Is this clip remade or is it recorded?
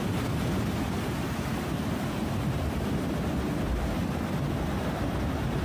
remade